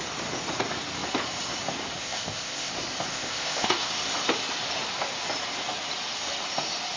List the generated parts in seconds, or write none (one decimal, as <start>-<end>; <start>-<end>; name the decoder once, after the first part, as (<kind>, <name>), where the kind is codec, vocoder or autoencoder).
2.0-2.7 (codec, ZipCodec); 3.1-3.9